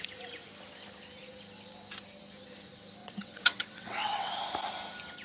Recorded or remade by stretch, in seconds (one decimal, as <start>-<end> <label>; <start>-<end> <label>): 0.0-3.0 recorded; 3.0-4.3 remade; 4.3-5.2 recorded